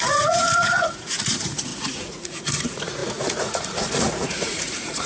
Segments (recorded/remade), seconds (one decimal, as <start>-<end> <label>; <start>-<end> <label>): 0.0-5.1 remade